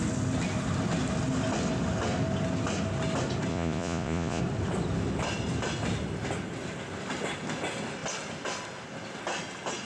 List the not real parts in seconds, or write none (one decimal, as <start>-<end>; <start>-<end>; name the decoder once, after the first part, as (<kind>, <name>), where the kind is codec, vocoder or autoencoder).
3.5-4.4 (vocoder, Vocos)